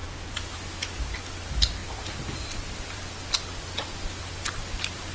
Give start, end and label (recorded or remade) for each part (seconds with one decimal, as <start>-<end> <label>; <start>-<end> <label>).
0.0-1.8 recorded; 1.8-5.1 remade